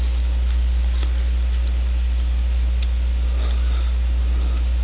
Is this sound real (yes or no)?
yes